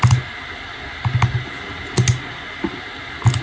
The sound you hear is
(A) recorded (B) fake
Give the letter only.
A